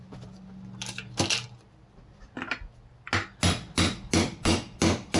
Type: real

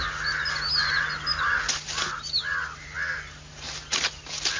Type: real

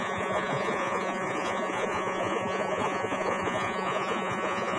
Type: fake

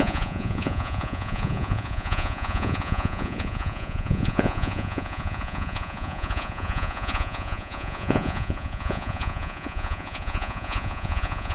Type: fake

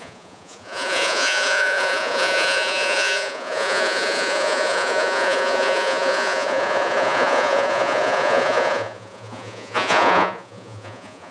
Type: fake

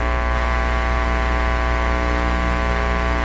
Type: real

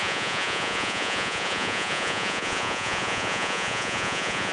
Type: fake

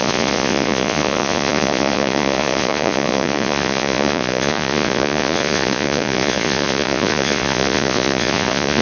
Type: fake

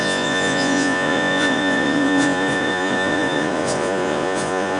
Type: fake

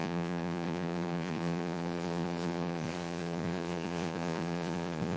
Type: fake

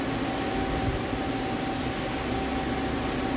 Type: real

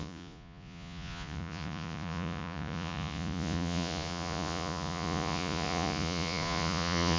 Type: fake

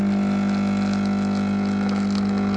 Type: real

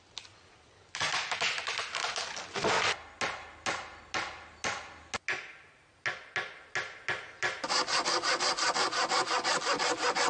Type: real